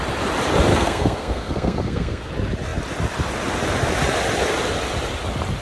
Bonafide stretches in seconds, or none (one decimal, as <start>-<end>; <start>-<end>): 0.0-0.7; 2.3-5.6